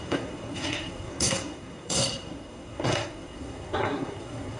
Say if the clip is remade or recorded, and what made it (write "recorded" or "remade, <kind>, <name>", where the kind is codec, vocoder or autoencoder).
remade, codec, SNAC